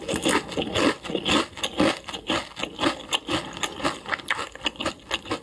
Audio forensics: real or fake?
real